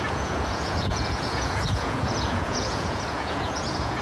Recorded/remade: remade